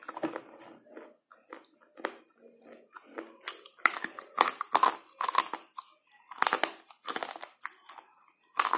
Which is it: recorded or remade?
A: recorded